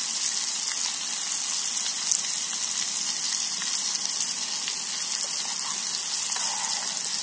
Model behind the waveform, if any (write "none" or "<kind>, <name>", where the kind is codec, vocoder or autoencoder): none